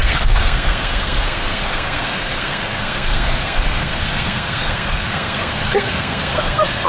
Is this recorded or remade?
remade